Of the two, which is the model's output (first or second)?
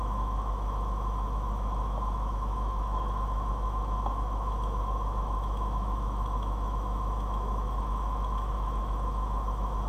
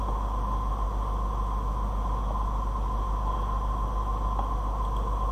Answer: first